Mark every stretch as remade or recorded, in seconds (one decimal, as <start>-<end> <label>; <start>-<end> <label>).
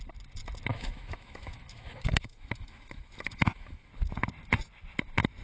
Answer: 0.0-0.7 recorded; 0.7-3.9 remade; 3.9-5.4 recorded